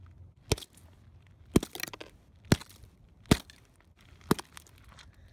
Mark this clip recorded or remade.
recorded